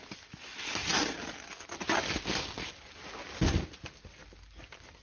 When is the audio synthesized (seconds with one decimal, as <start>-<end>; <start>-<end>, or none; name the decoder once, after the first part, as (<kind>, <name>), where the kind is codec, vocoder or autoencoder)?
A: none